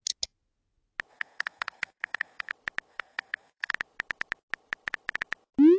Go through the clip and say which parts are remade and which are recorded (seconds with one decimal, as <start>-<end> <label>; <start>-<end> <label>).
0.0-1.1 recorded; 1.1-2.5 remade; 2.5-2.9 recorded; 2.9-3.7 remade; 3.7-5.8 recorded